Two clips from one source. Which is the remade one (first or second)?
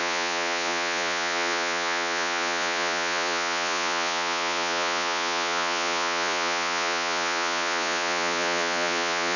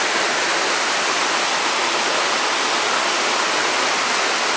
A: first